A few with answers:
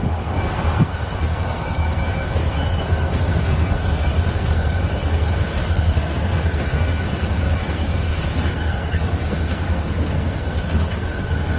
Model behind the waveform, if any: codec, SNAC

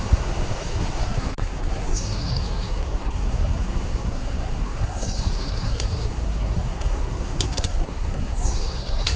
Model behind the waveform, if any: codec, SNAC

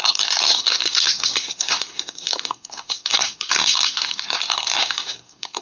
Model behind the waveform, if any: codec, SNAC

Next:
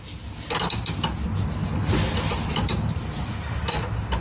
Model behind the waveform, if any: none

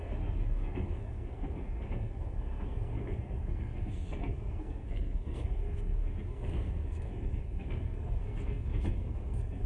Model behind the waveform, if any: codec, SNAC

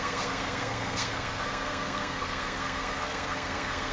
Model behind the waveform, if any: codec, SNAC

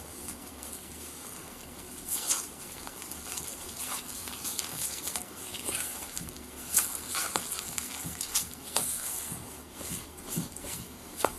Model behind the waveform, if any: codec, SNAC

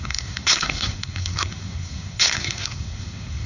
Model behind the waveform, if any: codec, SNAC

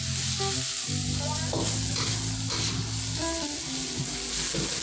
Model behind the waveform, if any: none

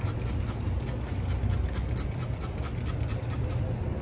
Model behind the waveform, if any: none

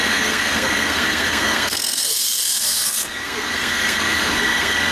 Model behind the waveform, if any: codec, SNAC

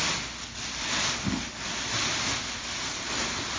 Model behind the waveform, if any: none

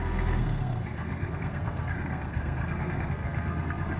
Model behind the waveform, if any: codec, SNAC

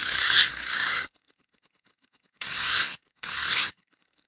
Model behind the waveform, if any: codec, SNAC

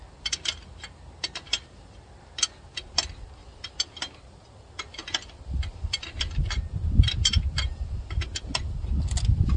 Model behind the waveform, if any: none